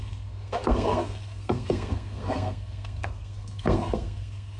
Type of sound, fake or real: fake